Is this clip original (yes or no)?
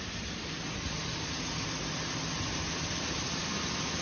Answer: yes